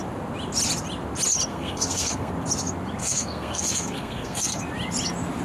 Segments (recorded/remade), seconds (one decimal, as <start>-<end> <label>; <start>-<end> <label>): 0.0-1.5 recorded; 1.5-2.3 remade; 2.3-3.0 recorded; 3.0-4.6 remade; 4.6-5.4 recorded